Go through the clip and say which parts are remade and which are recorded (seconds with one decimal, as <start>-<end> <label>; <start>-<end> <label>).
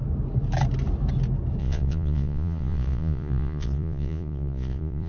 0.0-1.6 recorded; 1.6-5.1 remade